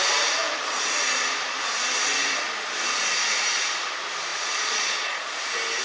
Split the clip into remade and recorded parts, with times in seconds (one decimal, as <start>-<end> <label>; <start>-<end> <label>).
0.0-4.3 recorded; 4.3-5.3 remade; 5.3-5.8 recorded